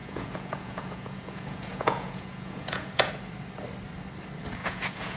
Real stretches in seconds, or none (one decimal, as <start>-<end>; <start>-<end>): 3.1-4.6